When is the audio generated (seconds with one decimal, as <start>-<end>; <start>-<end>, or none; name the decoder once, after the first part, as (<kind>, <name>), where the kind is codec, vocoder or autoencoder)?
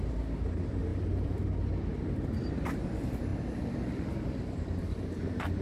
0.9-1.5 (vocoder, BigVGAN v2)